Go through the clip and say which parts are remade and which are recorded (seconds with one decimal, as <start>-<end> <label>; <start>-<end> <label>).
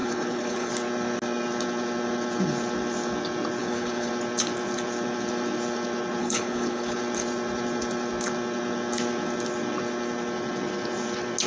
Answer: 0.0-0.7 remade; 0.7-3.6 recorded; 3.6-4.1 remade; 4.1-6.2 recorded; 6.2-7.0 remade; 7.0-11.5 recorded